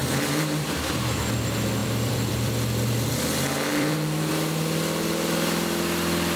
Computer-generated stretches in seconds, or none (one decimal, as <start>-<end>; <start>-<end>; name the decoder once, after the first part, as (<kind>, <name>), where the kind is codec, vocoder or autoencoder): 0.0-1.2 (vocoder, BigVGAN v2); 1.8-3.1; 3.7-4.3